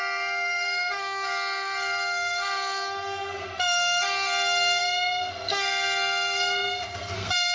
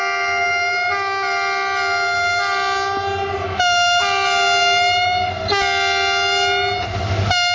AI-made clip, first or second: first